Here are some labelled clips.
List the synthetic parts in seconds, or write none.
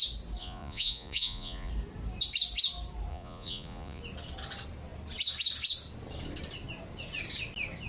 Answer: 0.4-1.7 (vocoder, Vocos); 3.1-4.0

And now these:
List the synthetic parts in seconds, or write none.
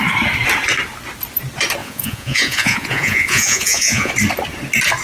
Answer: 1.8-4.1 (vocoder, Vocos)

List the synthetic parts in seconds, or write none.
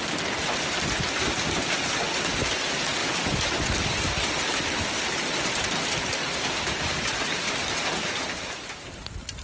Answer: none